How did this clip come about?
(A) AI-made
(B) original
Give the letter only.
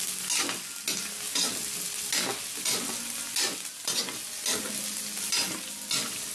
B